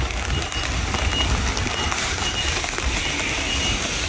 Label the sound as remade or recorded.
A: recorded